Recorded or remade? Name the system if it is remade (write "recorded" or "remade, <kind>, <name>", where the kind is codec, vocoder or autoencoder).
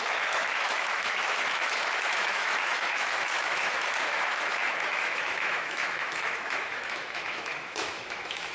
remade, autoencoder, DAC-VAE